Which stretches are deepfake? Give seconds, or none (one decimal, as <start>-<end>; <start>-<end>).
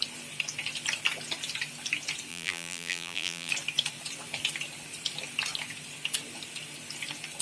2.3-3.5